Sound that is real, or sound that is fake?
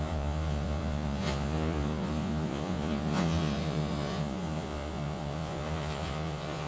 fake